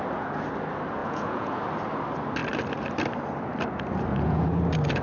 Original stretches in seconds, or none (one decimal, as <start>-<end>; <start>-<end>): 0.0-1.0; 1.6-4.1; 4.6-5.0